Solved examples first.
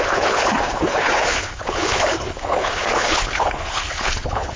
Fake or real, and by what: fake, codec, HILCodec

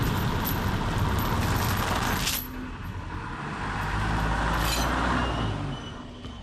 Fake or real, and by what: real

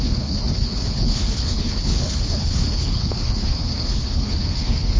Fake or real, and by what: fake, codec, HILCodec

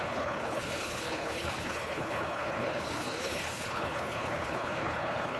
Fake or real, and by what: fake, codec, HILCodec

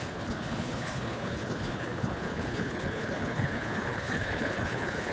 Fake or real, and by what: fake, codec, HILCodec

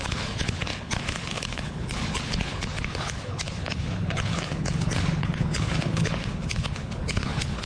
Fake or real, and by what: fake, codec, HILCodec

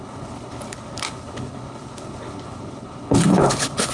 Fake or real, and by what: fake, codec, HILCodec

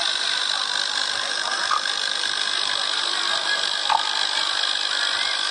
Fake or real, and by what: real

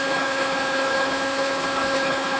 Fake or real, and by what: fake, codec, HILCodec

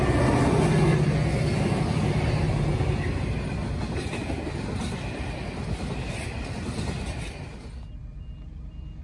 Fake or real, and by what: real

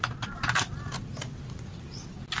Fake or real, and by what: real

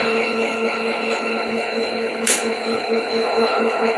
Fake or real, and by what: fake, codec, HILCodec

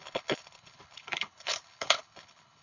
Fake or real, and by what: fake, codec, HILCodec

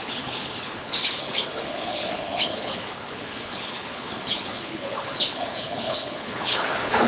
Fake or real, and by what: fake, codec, HILCodec